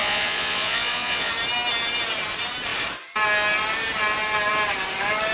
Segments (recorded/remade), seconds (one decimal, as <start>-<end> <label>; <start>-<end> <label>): 0.0-1.3 remade; 1.3-5.3 recorded